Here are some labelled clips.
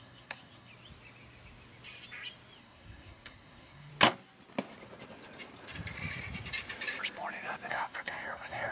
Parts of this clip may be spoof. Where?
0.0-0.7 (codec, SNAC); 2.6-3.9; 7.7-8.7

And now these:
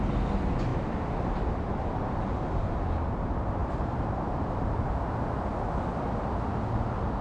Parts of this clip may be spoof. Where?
3.6-4.9 (vocoder, BigVGAN v2)

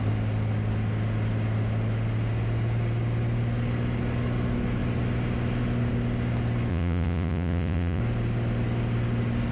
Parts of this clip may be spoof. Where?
6.7-8.0 (vocoder, Vocos)

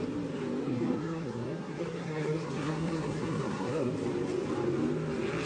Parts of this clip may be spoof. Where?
0.6-3.9 (codec, SNAC)

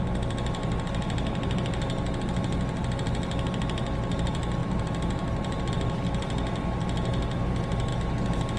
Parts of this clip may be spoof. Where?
4.6-5.7 (vocoder, BigVGAN v2)